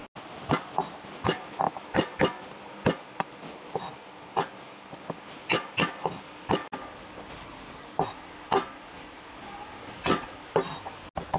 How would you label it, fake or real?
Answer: real